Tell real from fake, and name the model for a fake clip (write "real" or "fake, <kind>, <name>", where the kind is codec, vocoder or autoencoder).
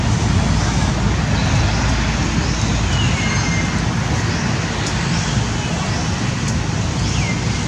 real